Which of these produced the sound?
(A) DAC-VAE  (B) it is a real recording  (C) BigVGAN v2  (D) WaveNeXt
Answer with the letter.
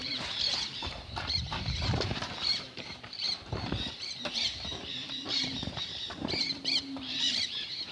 C